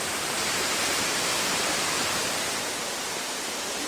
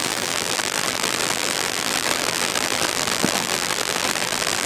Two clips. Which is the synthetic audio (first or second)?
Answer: second